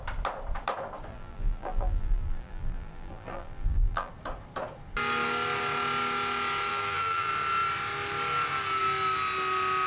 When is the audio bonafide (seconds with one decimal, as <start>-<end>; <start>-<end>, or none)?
0.0-1.1; 4.1-6.7; 7.3-9.9

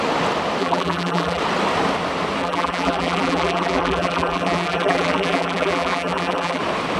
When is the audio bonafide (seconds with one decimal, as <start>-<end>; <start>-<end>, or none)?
0.0-0.6; 1.4-2.4; 6.6-7.0